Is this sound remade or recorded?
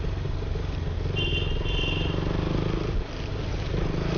recorded